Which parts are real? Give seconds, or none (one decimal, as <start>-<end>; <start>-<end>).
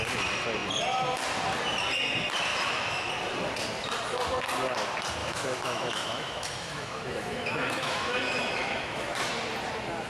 0.0-2.5; 3.1-5.2; 9.3-10.1